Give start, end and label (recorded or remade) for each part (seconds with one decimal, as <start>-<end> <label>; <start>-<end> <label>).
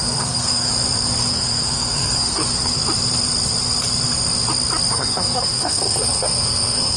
0.0-0.7 remade; 0.7-1.3 recorded; 1.3-2.7 remade; 2.7-4.9 recorded; 4.9-7.0 remade